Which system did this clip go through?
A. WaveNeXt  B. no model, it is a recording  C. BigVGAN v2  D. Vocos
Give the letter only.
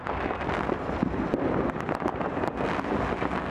B